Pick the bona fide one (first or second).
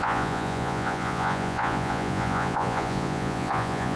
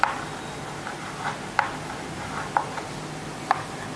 second